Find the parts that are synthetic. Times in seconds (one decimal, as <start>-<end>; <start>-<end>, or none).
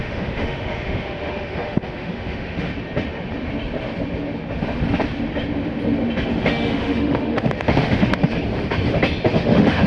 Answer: 0.0-2.7; 6.4-8.3; 9.3-9.9